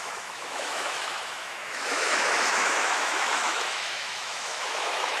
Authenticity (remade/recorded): remade